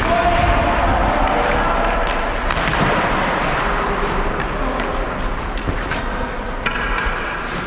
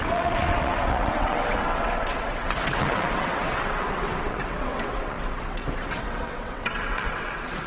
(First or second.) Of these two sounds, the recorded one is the first